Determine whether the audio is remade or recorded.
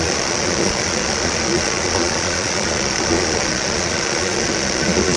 remade